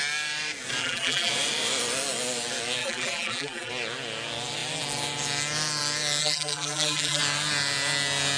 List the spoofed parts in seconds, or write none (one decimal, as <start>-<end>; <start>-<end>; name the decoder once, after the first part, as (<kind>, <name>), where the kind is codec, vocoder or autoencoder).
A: 0.8-1.3 (vocoder, BigVGAN v2); 2.8-3.7; 6.2-7.2